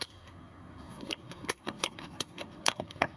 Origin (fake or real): fake